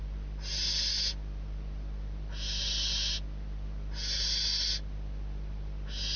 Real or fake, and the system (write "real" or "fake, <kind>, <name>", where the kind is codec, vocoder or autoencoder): real